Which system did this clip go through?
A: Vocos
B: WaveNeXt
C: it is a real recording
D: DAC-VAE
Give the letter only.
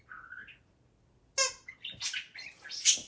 C